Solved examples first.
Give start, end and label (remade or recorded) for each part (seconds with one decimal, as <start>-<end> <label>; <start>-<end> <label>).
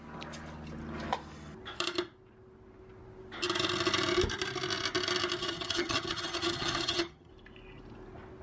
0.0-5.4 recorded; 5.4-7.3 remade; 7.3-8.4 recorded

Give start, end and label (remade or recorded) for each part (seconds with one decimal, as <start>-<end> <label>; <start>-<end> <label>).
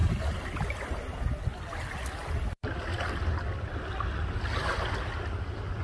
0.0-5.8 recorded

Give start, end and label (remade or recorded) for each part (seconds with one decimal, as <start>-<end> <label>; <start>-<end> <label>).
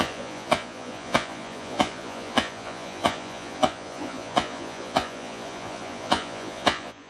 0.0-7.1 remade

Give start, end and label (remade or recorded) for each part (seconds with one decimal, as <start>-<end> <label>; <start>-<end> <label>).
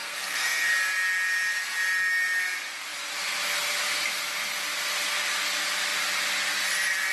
0.0-0.7 remade; 0.7-7.1 recorded